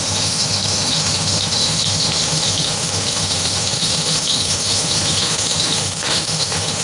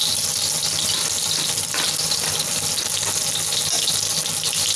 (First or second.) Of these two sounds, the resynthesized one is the first